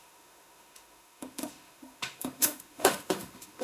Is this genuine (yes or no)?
no